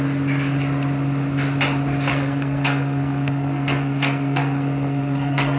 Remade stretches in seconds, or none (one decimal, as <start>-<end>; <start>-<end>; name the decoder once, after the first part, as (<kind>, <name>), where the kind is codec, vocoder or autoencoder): 2.1-5.6 (codec, SNAC)